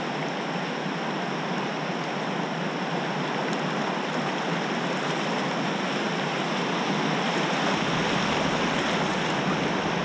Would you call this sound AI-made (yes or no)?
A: no